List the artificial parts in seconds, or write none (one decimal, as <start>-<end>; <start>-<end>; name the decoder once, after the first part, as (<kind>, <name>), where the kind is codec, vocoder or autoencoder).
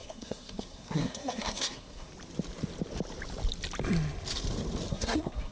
0.0-2.1 (codec, SNAC); 4.9-5.5